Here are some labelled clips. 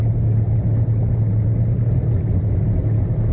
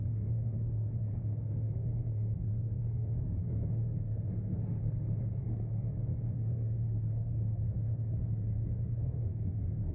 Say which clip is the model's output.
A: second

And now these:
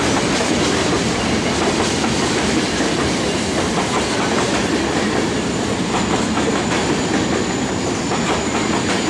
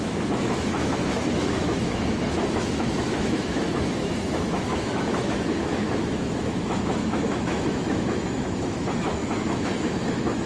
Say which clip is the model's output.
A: second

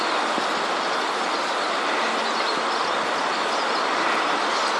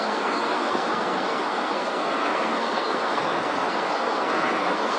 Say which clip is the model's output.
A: second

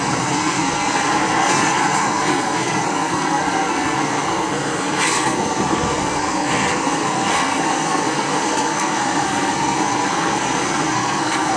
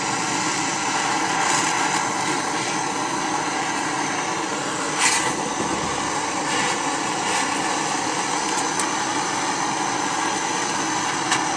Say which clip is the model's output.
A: first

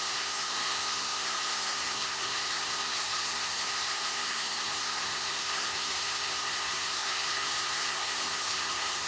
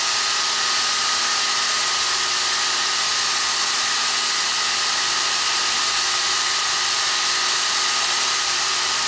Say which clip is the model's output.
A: first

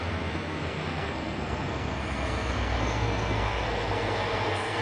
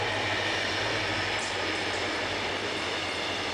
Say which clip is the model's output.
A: first